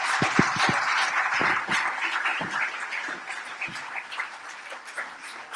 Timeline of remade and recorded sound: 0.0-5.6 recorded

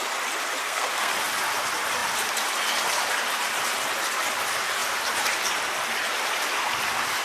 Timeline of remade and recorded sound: 0.0-0.6 recorded; 0.6-1.1 remade; 1.1-7.2 recorded

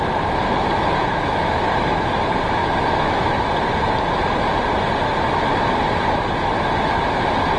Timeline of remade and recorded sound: 0.0-1.0 recorded; 1.0-1.8 remade; 1.8-2.6 recorded; 2.6-3.5 remade; 3.5-7.6 recorded

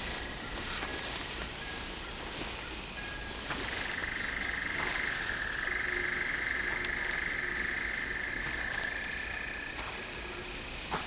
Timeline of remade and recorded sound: 0.0-11.1 recorded

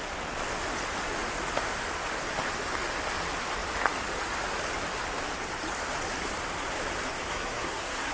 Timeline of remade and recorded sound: 0.0-7.3 recorded; 7.3-8.1 remade

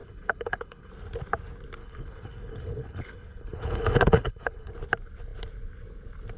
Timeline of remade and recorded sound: 0.0-0.9 remade; 0.9-1.8 recorded; 1.8-4.7 remade; 4.7-6.4 recorded